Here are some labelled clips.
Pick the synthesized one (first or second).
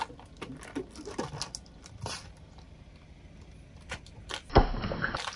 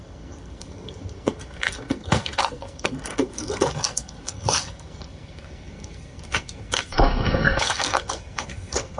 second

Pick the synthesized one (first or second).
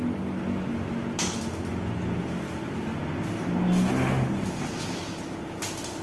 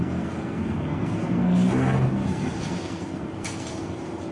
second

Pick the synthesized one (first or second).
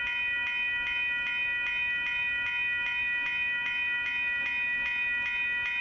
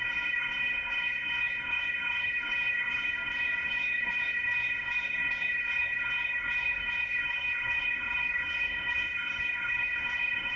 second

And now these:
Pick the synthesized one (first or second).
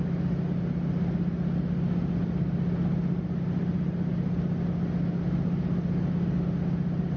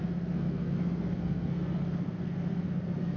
second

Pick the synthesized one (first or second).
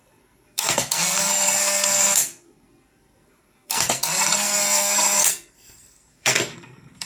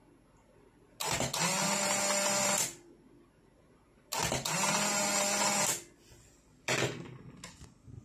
first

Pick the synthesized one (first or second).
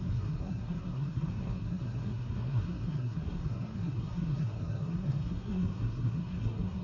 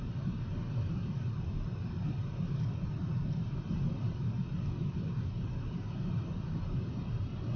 first